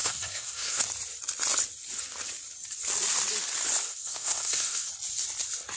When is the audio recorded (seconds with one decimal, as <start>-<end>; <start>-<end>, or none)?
0.8-3.9; 4.9-5.8